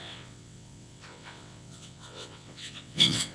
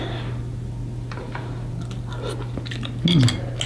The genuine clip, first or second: second